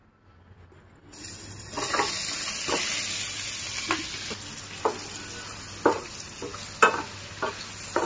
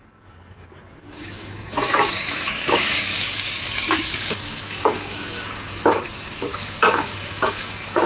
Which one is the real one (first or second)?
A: first